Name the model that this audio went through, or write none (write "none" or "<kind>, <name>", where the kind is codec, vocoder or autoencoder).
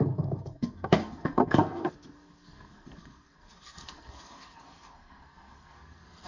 codec, SNAC